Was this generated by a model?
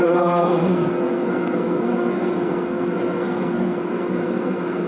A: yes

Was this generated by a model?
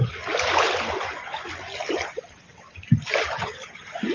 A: no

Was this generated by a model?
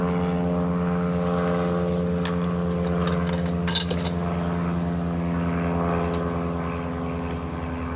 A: no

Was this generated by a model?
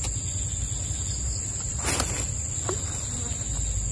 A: no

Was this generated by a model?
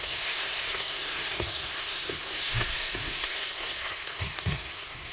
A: yes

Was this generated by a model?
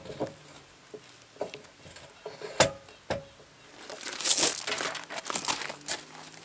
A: no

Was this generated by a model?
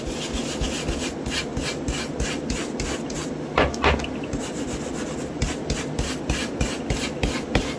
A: no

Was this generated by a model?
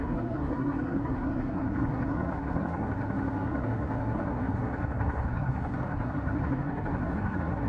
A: yes